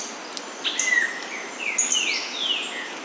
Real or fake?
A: real